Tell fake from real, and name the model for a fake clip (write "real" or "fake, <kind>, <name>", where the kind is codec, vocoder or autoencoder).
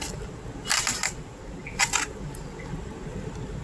real